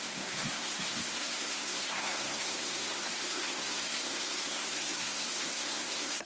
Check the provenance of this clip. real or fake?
fake